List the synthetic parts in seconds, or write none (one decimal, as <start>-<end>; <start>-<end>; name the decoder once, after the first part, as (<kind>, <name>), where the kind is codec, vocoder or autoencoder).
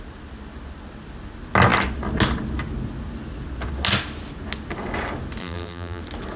5.4-6.0 (vocoder, BigVGAN v2)